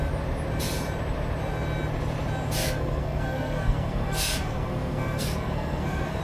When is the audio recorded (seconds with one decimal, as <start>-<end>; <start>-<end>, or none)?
0.0-2.6